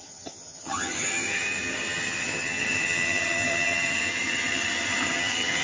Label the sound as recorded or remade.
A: remade